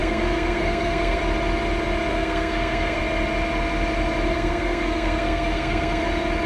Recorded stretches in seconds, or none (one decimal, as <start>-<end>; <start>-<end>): 1.2-2.1; 3.0-4.3; 6.0-6.5